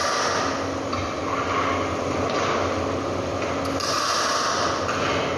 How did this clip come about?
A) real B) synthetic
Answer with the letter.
A